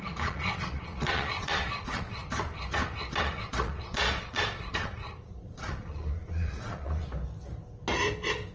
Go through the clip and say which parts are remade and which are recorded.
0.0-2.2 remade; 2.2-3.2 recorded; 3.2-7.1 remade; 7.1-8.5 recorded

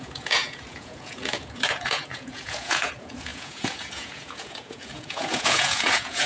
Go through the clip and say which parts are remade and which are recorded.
0.0-6.3 remade

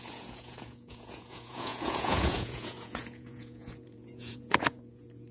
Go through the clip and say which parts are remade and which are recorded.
0.0-5.3 remade

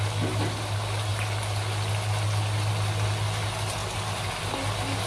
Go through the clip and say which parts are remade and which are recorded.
0.0-5.1 recorded

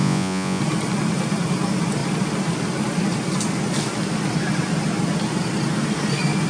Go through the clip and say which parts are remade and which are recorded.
0.0-0.6 remade; 0.6-6.5 recorded

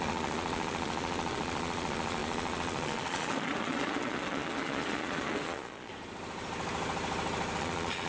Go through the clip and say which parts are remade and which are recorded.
0.0-5.9 remade; 5.9-7.6 recorded; 7.6-8.1 remade

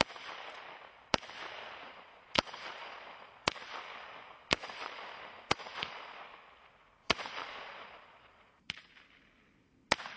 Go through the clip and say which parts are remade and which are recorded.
0.0-1.8 recorded; 1.8-3.5 remade; 3.5-4.6 recorded; 4.6-6.2 remade; 6.2-7.0 recorded; 7.0-8.7 remade; 8.7-10.2 recorded

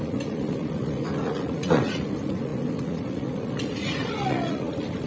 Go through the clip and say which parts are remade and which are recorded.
0.0-5.1 remade